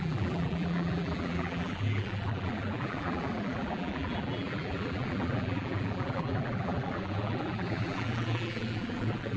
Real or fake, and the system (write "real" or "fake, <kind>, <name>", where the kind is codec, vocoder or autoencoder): fake, vocoder, BigVGAN v2